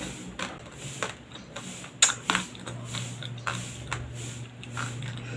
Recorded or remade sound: recorded